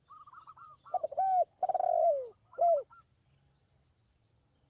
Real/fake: real